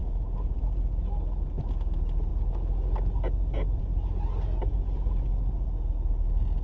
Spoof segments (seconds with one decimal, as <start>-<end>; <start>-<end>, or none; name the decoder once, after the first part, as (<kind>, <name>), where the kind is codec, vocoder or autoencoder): 0.0-0.6 (vocoder, Vocos)